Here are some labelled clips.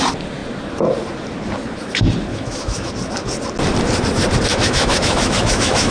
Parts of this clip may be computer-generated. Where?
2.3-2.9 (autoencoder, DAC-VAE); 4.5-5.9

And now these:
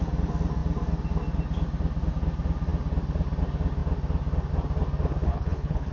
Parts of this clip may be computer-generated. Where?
5.3-5.9 (codec, HILCodec)

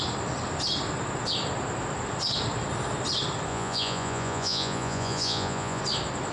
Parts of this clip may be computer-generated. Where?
3.5-5.8 (vocoder, Vocos)

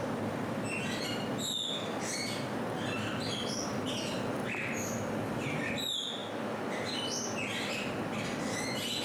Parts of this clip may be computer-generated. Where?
none